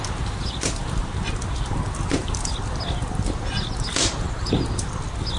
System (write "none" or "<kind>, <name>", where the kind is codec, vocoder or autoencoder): none